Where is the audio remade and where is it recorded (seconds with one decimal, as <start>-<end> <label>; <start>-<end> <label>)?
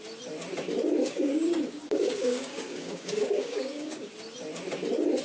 0.0-1.0 recorded; 1.0-4.1 remade; 4.1-5.2 recorded